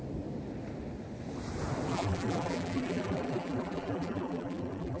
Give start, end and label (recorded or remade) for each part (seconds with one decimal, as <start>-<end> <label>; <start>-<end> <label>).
0.0-1.9 recorded; 1.9-5.0 remade